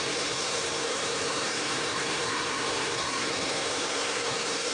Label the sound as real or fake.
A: fake